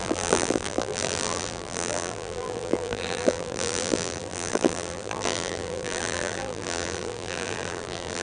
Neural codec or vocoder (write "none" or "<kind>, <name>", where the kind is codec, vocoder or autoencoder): vocoder, BigVGAN v2